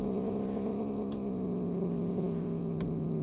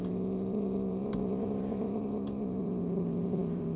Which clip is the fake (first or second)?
second